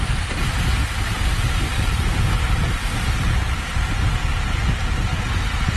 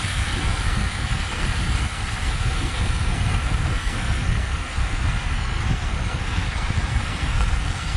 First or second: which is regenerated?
second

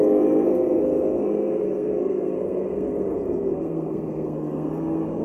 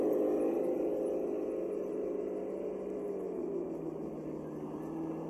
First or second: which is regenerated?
first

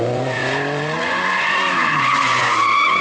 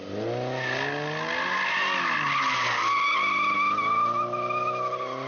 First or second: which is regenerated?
first